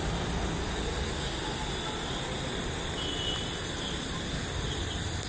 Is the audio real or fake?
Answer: real